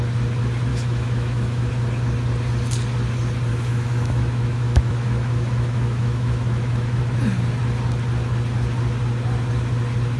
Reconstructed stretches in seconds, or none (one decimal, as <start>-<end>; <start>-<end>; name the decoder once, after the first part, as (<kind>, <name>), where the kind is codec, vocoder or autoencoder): 0.7-1.7 (autoencoder, DAC-VAE); 3.5-7.0